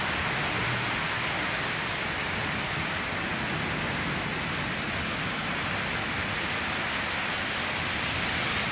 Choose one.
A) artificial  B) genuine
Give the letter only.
B